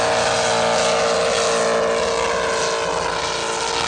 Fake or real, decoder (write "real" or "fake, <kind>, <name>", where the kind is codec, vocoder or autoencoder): real